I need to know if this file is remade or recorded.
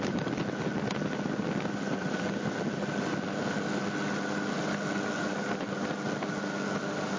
recorded